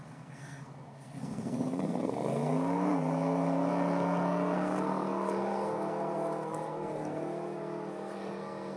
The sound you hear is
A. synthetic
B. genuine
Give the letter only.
A